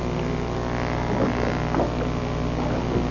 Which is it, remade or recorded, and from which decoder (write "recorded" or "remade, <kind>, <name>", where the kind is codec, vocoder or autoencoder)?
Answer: recorded